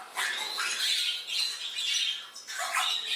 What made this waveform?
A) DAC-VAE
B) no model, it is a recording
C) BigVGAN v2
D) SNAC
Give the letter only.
B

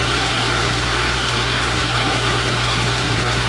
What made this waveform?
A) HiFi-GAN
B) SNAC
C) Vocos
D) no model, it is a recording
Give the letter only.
B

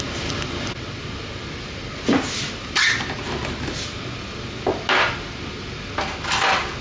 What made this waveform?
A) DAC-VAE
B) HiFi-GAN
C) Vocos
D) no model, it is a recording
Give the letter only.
D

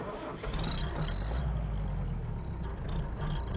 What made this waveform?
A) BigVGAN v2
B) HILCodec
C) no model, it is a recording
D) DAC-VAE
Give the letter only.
C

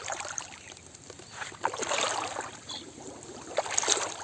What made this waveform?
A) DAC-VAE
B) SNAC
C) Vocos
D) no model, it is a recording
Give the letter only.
D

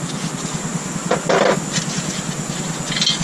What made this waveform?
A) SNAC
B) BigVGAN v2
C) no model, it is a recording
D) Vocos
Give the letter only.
C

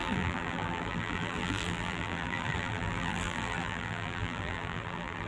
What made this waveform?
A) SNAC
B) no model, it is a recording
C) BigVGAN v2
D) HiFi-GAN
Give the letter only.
C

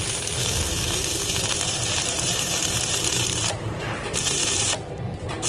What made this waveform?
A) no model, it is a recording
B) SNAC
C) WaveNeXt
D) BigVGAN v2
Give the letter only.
D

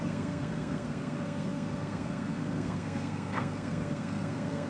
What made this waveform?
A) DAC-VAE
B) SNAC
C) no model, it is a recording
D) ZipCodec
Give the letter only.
B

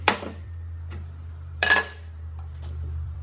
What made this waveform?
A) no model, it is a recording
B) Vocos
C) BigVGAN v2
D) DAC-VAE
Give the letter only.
C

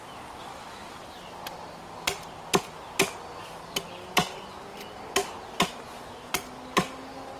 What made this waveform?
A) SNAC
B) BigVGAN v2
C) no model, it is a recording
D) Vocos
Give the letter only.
C